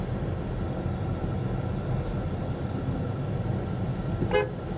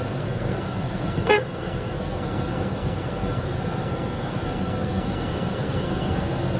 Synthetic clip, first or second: second